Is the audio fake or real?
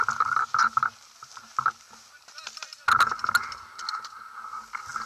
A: real